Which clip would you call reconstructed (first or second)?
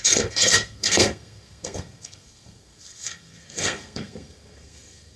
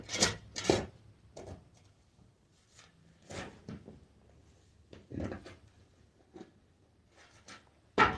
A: first